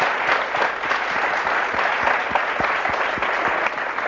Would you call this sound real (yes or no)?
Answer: yes